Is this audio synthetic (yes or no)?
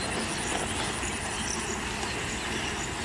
no